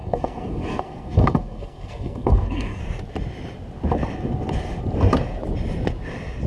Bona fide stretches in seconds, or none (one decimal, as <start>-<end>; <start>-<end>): 2.8-6.5